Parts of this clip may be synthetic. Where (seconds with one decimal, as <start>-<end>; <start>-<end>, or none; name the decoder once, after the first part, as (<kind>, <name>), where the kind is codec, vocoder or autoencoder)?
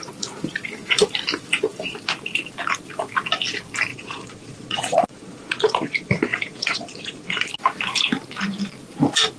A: 3.9-7.5 (vocoder, Vocos)